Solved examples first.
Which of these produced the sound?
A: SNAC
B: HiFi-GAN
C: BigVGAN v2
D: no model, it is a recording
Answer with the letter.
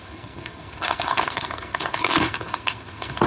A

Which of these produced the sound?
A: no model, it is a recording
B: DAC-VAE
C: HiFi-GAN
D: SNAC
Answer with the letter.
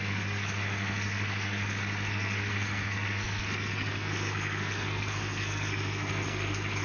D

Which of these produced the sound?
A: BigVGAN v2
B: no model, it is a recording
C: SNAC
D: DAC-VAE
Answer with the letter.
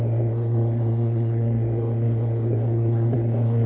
C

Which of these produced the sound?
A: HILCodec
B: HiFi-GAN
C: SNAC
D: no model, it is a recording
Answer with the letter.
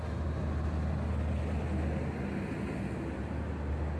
D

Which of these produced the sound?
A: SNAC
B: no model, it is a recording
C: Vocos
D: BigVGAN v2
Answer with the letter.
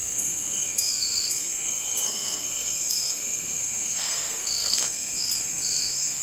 A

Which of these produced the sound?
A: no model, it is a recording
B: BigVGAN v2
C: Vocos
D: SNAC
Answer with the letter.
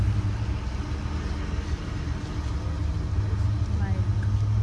A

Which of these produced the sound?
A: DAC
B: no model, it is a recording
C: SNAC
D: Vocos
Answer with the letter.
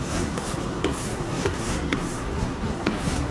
C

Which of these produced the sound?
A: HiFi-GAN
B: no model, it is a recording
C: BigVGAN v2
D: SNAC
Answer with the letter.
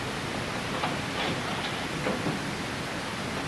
B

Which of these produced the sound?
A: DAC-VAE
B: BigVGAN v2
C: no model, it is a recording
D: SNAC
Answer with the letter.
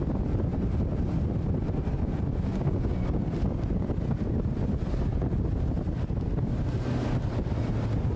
C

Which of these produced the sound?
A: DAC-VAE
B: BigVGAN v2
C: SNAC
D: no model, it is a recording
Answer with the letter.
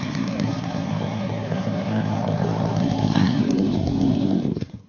C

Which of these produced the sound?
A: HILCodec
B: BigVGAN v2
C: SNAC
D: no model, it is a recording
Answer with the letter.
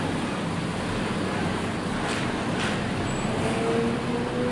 D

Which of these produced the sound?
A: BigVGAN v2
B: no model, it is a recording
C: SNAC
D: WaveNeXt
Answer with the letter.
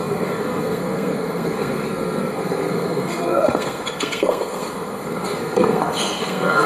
C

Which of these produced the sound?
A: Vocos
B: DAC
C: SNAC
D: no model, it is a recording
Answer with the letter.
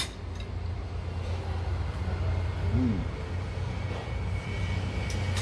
D